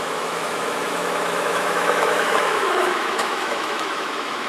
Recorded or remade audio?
remade